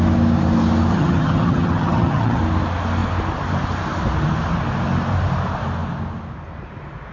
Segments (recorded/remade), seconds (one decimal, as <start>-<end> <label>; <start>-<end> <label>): 0.0-0.9 recorded; 0.9-2.4 remade; 2.4-7.1 recorded